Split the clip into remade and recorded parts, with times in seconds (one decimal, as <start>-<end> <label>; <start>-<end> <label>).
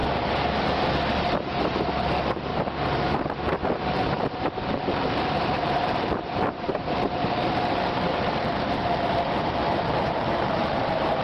0.0-0.8 recorded; 0.8-11.2 remade